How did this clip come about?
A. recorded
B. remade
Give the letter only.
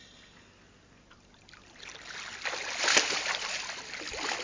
A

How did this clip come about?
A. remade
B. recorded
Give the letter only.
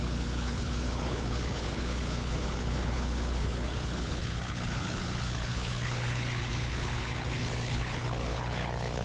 A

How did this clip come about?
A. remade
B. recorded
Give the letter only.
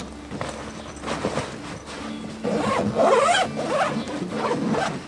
B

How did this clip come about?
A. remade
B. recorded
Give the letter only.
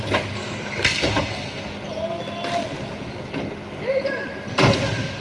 B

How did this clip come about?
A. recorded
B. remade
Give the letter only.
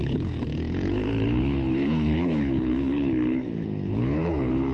B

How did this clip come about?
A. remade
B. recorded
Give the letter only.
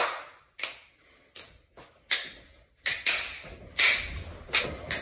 B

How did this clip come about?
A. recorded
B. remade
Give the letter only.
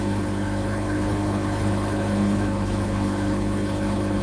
B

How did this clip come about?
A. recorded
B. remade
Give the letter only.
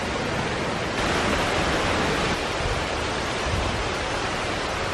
A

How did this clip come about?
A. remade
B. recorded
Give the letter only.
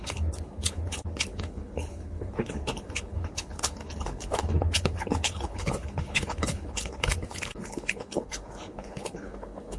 A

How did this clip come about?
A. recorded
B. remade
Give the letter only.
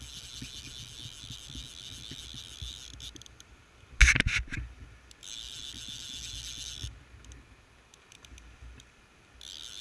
A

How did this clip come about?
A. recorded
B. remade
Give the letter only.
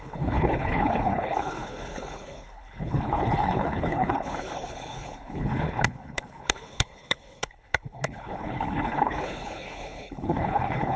B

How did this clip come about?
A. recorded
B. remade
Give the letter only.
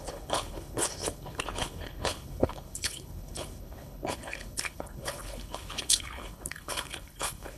B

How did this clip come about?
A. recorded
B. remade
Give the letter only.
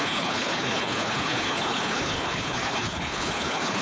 B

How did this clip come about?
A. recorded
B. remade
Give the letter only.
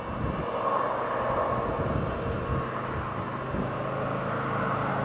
A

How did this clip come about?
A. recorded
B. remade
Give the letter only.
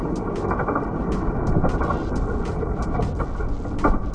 A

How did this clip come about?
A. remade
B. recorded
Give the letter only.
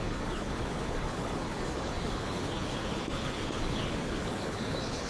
A